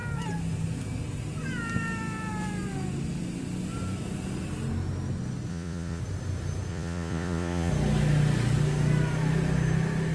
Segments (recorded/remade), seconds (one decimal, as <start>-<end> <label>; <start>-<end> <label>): 0.0-5.5 recorded; 5.5-6.0 remade; 6.0-6.7 recorded; 6.7-7.7 remade; 7.7-10.1 recorded